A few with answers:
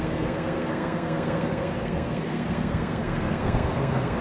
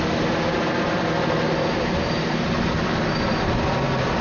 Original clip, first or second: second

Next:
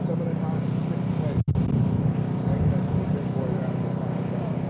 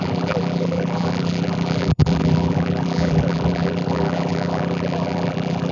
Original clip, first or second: first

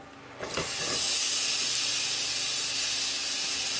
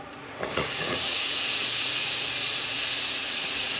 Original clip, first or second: first